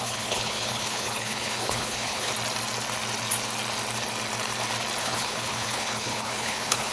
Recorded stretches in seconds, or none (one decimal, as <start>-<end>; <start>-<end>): 2.3-5.0